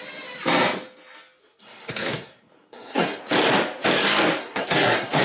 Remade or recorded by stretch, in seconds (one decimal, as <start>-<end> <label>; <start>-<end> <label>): 0.0-1.4 recorded; 1.4-3.2 remade; 3.2-4.4 recorded; 4.4-5.2 remade